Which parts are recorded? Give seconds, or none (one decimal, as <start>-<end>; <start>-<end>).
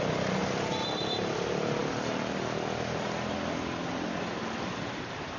0.0-5.4